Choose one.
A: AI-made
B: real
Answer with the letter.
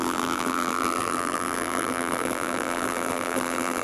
A